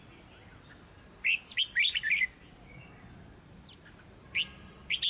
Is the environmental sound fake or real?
real